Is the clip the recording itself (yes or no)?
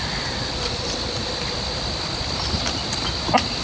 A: yes